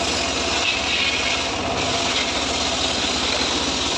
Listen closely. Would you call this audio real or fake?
real